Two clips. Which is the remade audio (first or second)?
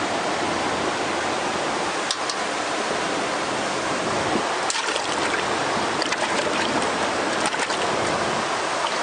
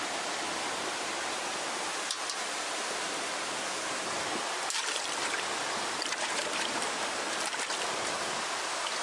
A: second